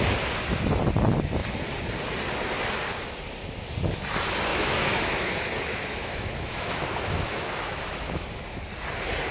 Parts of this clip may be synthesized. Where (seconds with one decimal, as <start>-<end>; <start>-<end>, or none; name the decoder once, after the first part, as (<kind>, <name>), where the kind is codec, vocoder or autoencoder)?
4.5-8.6 (autoencoder, DAC-VAE)